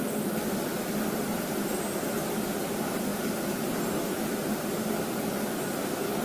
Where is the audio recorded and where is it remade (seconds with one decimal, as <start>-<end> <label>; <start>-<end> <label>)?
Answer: 0.0-3.1 recorded; 3.1-4.8 remade; 4.8-6.2 recorded